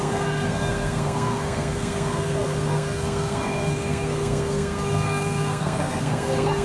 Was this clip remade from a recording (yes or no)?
yes